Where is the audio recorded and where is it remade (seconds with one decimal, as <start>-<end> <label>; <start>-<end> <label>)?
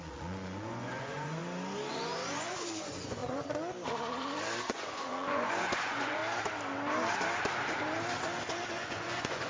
0.0-1.4 remade; 1.4-1.9 recorded; 1.9-3.2 remade; 3.2-4.6 recorded; 4.6-6.2 remade; 6.2-8.7 recorded; 8.7-9.5 remade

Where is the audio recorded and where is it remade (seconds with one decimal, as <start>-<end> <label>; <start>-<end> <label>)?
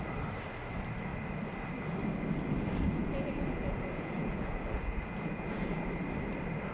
0.0-3.0 recorded; 3.0-5.9 remade; 5.9-6.7 recorded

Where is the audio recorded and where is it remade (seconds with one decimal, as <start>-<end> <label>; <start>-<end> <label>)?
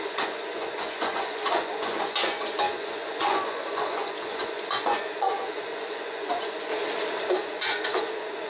0.0-6.7 remade; 6.7-7.3 recorded; 7.3-8.5 remade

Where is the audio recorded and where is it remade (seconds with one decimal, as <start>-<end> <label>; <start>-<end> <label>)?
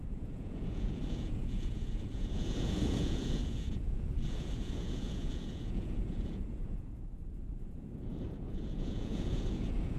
0.0-10.0 remade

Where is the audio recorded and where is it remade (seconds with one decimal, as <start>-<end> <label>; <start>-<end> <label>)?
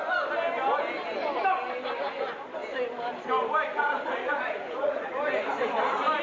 0.0-3.7 recorded; 3.7-5.1 remade; 5.1-6.2 recorded